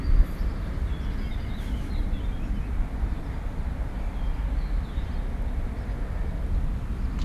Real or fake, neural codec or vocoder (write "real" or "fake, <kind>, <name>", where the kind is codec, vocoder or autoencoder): real